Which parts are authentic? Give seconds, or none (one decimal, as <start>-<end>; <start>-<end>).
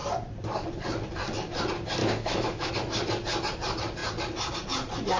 0.0-2.0; 2.7-5.2